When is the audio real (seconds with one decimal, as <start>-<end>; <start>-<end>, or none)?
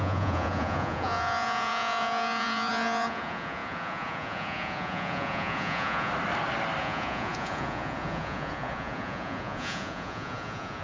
6.1-6.8